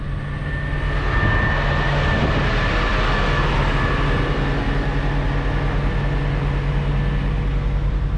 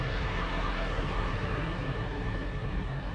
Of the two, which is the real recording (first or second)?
first